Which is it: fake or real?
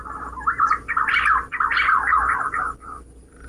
real